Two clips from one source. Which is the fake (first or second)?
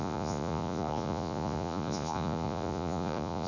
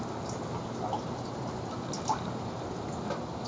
first